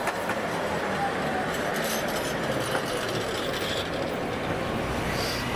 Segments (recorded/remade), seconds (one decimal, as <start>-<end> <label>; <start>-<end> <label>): 0.0-5.6 recorded